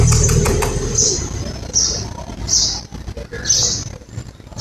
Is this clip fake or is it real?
real